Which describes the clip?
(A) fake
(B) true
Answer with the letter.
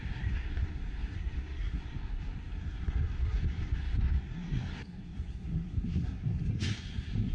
A